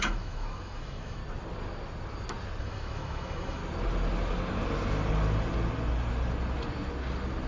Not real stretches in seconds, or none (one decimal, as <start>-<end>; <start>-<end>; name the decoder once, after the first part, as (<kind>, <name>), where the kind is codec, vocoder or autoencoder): 0.0-1.2 (autoencoder, DAC-VAE); 2.6-3.6